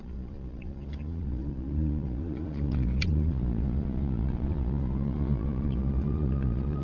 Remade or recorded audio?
remade